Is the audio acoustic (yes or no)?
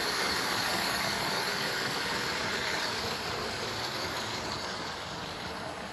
no